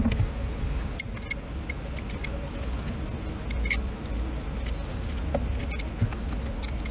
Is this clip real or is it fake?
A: real